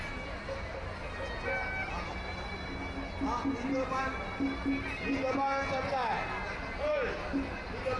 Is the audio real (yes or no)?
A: yes